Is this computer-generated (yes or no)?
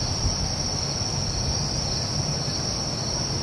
no